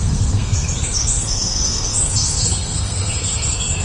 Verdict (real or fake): fake